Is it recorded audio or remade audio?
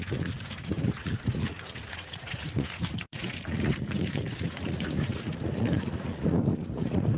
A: remade